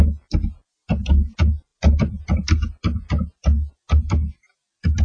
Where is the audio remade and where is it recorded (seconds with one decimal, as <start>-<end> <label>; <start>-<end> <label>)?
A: 0.0-5.0 recorded